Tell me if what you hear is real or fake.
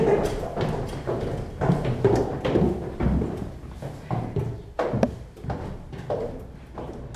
real